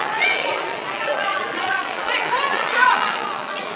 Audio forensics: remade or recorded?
remade